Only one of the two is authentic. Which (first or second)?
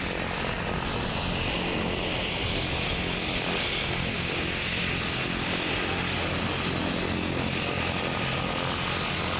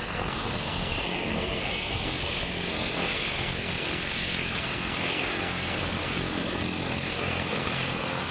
first